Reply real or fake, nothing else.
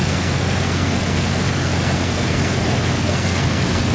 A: fake